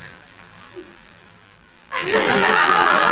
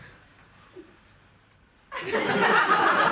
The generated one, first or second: first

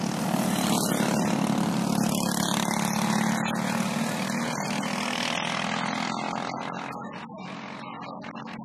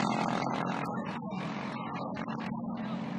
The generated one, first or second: second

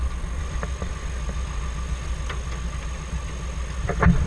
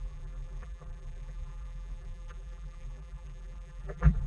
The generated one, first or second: second